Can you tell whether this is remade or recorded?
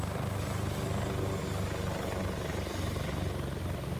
recorded